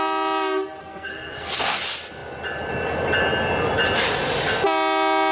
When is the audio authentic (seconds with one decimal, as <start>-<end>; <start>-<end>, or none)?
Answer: 0.0-0.8; 1.8-5.3